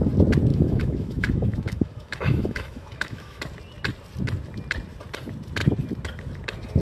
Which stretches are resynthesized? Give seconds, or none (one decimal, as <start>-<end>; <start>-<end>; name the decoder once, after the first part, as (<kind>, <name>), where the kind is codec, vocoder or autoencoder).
0.5-3.4 (autoencoder, DAC-VAE)